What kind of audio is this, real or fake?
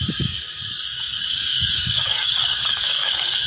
fake